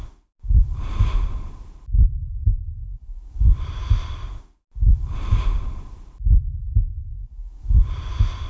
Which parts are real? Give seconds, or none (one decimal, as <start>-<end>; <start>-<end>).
0.0-2.4; 4.1-8.5